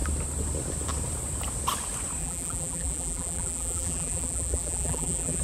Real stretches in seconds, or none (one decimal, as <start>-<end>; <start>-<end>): 0.0-2.2